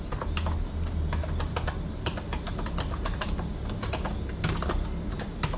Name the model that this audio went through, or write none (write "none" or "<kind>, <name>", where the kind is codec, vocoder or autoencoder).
none